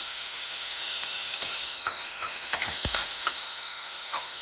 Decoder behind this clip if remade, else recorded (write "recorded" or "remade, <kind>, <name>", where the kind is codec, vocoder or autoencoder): remade, autoencoder, DAC-VAE